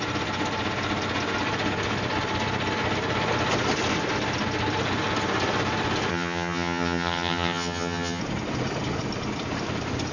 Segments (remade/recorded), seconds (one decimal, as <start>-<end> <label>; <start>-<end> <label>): 0.0-6.1 recorded; 6.1-8.2 remade; 8.2-10.1 recorded